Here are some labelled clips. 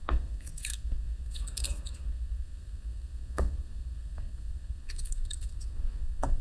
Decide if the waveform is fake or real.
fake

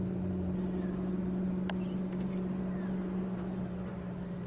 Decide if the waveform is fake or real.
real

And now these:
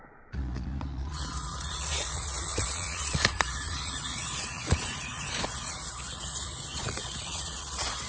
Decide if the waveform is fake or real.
fake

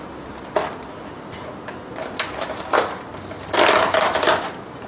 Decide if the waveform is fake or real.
real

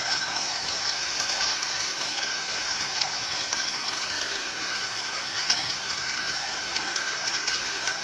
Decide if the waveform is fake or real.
fake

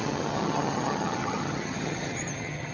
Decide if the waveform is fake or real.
fake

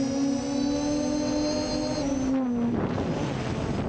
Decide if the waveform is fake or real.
real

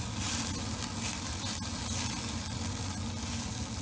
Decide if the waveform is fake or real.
real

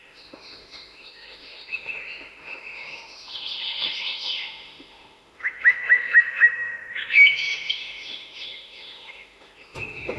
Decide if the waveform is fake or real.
fake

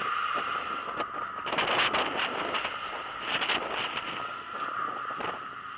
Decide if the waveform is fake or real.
real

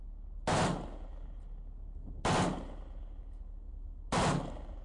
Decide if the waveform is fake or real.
real